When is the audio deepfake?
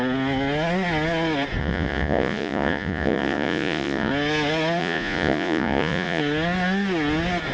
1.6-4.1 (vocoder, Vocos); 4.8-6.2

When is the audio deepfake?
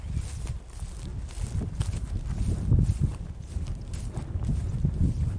3.1-4.4 (vocoder, BigVGAN v2)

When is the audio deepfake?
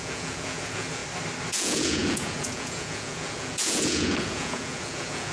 0.0-1.0 (vocoder, Vocos); 1.5-5.3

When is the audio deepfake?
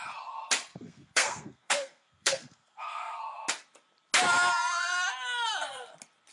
0.7-3.2 (codec, SNAC)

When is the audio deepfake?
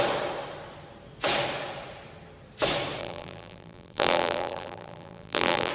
3.0-5.7 (vocoder, BigVGAN v2)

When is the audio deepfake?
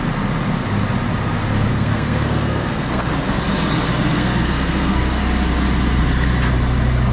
1.7-3.4 (codec, SNAC); 4.1-5.2